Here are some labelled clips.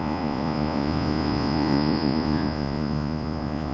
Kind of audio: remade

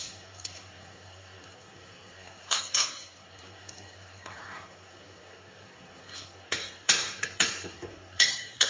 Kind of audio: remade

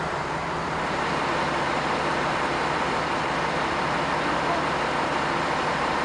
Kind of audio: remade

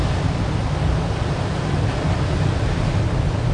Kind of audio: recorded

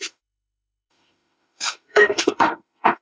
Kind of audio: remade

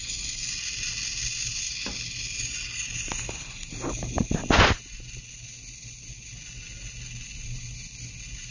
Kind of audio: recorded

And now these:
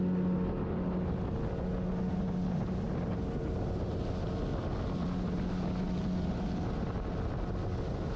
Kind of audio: recorded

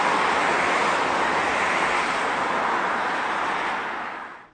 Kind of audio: recorded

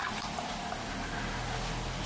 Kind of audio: recorded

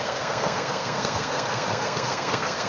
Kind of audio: remade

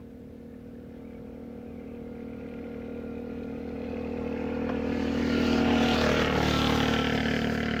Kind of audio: remade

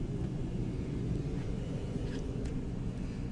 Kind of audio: remade